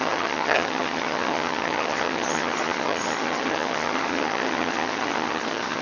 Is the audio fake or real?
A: fake